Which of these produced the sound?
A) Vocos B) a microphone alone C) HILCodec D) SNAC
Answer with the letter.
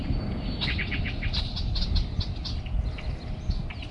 B